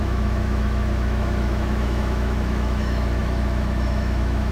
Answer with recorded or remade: remade